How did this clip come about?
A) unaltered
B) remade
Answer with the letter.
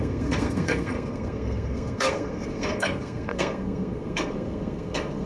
B